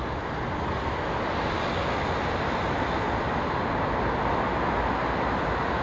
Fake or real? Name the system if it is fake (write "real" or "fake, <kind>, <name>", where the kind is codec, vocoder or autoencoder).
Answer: real